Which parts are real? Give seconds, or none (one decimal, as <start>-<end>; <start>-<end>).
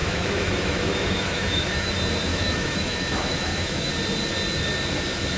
1.9-2.3; 3.9-5.4